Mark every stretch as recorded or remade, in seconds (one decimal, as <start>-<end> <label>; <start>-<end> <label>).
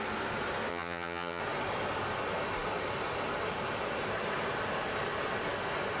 0.0-0.7 recorded; 0.7-1.4 remade; 1.4-6.0 recorded